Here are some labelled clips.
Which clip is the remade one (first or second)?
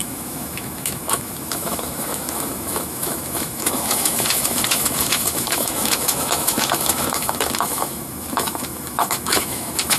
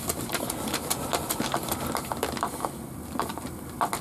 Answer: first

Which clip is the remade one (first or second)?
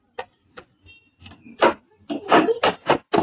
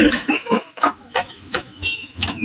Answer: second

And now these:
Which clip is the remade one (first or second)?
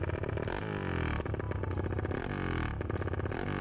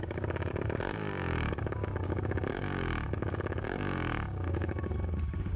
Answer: second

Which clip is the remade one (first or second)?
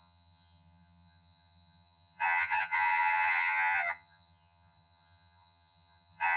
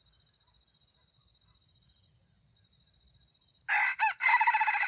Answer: first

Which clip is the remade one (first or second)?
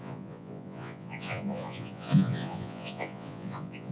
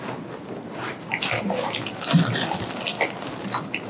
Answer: first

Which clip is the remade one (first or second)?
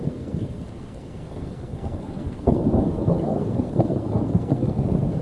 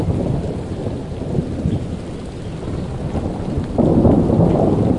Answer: first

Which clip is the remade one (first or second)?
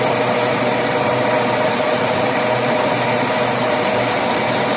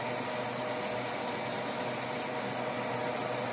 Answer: first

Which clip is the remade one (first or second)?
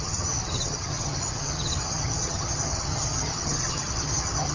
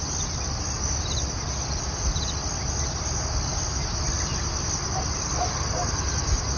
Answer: first